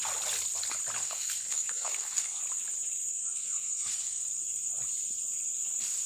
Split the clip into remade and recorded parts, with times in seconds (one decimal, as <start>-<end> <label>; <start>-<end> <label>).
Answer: 0.0-1.0 recorded; 1.0-2.4 remade; 2.4-3.1 recorded; 3.1-4.2 remade; 4.2-6.1 recorded